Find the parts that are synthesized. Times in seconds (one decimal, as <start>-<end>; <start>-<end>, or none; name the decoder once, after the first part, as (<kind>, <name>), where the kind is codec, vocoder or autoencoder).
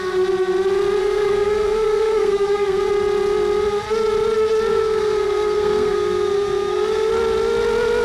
1.0-2.9 (codec, SNAC); 4.7-7.1